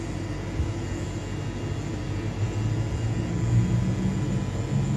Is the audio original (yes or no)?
yes